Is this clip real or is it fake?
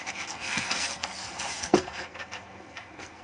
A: fake